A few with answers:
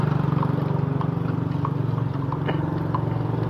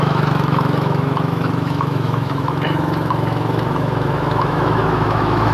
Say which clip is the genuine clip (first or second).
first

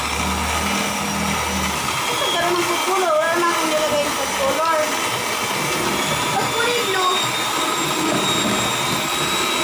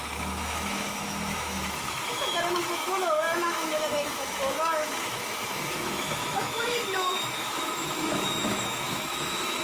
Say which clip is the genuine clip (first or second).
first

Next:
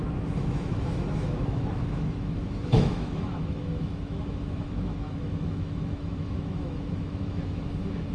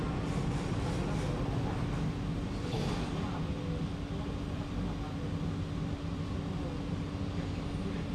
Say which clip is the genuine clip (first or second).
second